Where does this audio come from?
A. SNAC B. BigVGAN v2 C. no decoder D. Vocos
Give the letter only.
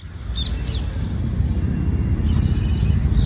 C